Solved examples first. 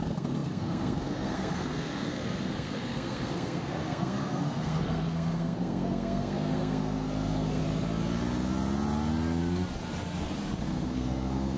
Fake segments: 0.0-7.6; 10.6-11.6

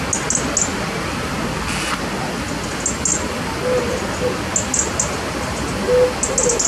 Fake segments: none

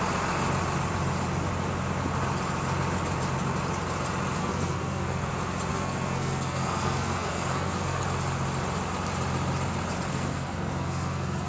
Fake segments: 4.4-5.3; 5.7-8.0; 10.1-11.5

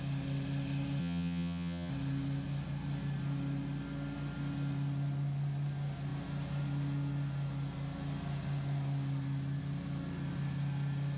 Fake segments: 1.0-1.9